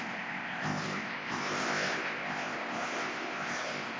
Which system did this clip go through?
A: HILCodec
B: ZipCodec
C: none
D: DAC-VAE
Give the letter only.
B